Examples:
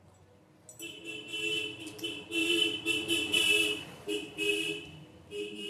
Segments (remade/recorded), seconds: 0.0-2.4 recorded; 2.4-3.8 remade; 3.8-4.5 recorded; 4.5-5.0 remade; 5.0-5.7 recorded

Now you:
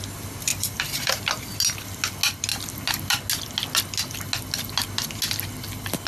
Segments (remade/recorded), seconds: 0.0-0.5 recorded; 0.5-1.2 remade; 1.2-6.1 recorded

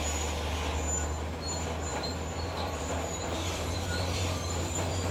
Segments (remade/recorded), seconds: 0.0-1.9 recorded; 1.9-5.1 remade

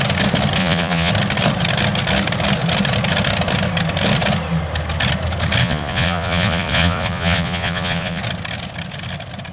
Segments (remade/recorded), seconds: 0.0-0.6 recorded; 0.6-1.1 remade; 1.1-5.6 recorded; 5.6-8.2 remade; 8.2-9.5 recorded